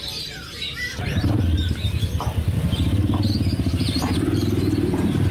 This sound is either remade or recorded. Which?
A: recorded